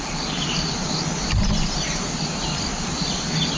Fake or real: real